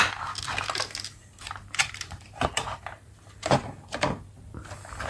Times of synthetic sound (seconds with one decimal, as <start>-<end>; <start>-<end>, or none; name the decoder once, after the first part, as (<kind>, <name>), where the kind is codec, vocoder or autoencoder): 1.2-3.7 (vocoder, BigVGAN v2)

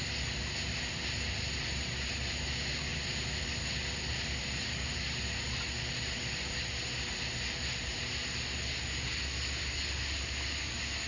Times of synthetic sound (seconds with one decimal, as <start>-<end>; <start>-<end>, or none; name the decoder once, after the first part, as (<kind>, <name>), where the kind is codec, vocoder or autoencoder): 2.9-3.5 (vocoder, BigVGAN v2)

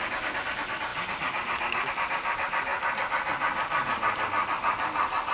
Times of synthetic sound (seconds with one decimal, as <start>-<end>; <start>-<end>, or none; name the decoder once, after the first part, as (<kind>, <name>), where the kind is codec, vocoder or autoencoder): none

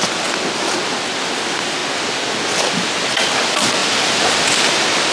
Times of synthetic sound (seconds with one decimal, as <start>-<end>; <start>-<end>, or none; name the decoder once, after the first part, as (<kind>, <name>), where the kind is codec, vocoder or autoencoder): none

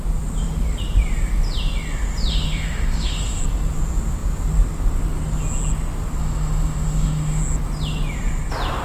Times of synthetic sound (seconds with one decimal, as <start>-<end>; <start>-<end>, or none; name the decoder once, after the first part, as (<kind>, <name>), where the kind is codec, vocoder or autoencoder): 2.3-3.4 (autoencoder, DAC-VAE); 6.2-7.4

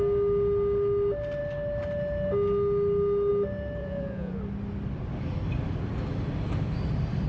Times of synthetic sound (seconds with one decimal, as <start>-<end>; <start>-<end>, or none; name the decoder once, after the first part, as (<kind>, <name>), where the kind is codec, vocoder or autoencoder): 3.8-4.4 (vocoder, Vocos)